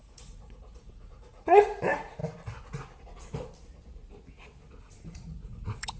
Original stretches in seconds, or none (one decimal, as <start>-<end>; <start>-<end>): 2.2-4.8